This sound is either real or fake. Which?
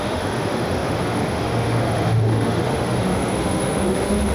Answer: fake